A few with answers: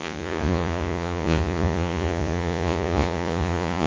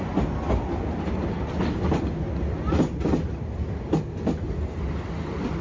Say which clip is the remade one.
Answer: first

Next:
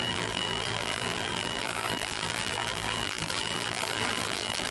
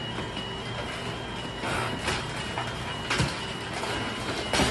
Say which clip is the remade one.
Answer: first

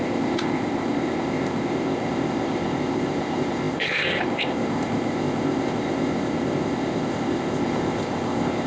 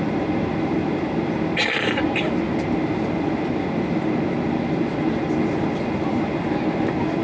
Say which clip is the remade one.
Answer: first